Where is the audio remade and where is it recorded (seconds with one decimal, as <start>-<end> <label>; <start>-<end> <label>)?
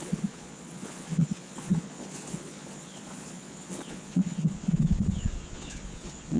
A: 0.0-6.4 remade